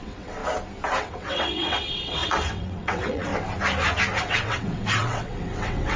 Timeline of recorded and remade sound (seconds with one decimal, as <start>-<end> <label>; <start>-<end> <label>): 0.0-0.4 remade; 0.4-1.0 recorded; 1.0-3.3 remade; 3.3-4.2 recorded; 4.2-6.0 remade